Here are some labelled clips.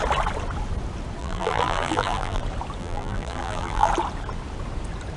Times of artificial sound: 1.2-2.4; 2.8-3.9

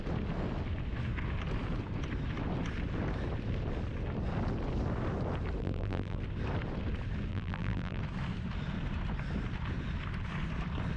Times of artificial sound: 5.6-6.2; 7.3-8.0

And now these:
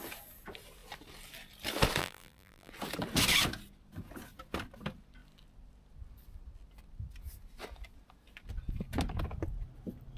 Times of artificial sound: 2.0-2.7

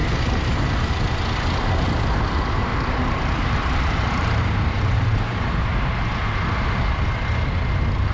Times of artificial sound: 2.7-5.9

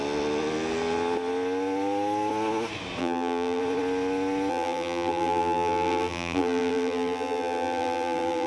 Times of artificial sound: 3.0-3.6; 4.5-8.5

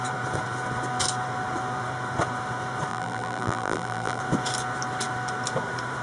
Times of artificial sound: 2.9-4.2

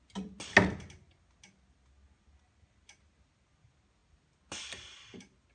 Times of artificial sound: none